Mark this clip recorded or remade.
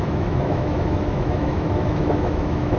remade